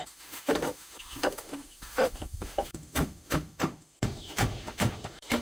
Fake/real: fake